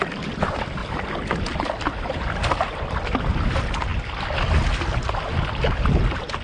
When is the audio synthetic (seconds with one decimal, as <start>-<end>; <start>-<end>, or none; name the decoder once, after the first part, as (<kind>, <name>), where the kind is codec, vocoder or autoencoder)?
0.0-0.8 (vocoder, BigVGAN v2); 1.4-3.9; 4.9-6.4